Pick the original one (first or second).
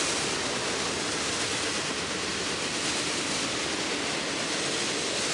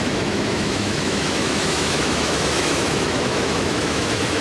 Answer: first